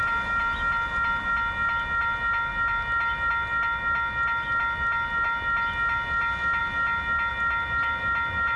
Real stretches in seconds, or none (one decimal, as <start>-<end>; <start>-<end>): 0.0-8.6